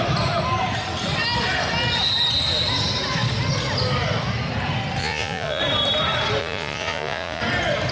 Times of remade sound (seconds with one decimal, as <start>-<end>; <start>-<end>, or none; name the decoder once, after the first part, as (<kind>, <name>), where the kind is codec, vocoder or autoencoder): 5.0-5.6 (vocoder, Vocos); 6.4-7.4